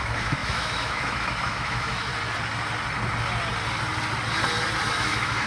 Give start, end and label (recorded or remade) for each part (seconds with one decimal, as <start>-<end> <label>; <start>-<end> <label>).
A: 0.0-2.1 remade; 2.1-4.9 recorded; 4.9-5.5 remade